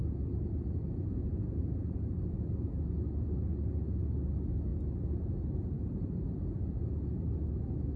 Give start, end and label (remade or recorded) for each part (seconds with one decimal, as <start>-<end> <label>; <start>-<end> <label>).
0.0-1.0 recorded; 1.0-1.6 remade; 1.6-8.0 recorded